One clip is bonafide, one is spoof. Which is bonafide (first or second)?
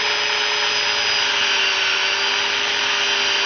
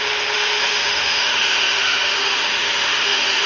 first